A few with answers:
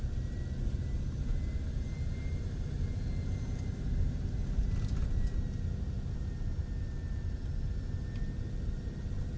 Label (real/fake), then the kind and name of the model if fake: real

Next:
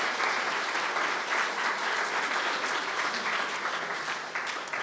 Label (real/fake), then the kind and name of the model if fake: real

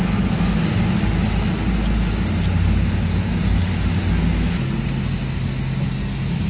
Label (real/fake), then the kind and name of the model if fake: real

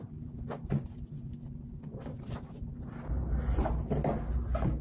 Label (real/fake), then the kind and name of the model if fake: real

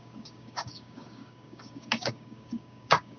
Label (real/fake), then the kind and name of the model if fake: fake, codec, DAC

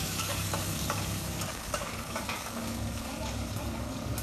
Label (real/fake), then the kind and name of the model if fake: fake, codec, DAC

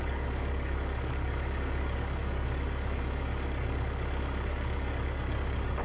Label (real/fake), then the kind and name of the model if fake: fake, codec, DAC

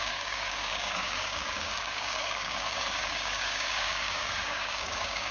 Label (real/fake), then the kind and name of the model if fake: fake, codec, DAC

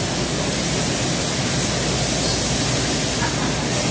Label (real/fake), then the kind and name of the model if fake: real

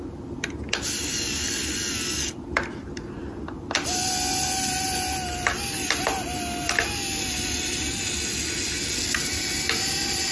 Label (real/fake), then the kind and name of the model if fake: real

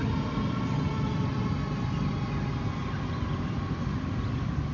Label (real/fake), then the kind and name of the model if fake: real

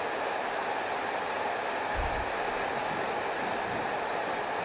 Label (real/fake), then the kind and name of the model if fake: real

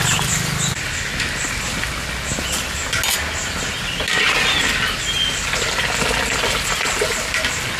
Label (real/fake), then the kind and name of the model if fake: real